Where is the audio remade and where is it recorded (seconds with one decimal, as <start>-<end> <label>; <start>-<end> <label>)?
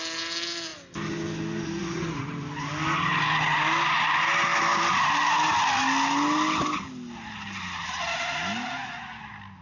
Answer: 0.0-9.6 recorded